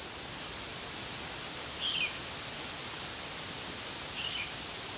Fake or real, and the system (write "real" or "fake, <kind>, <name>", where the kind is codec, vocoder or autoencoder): real